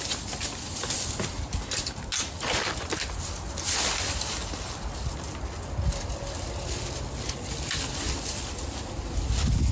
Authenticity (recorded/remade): recorded